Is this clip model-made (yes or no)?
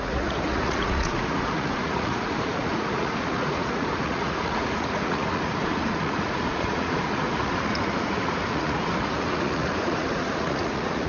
yes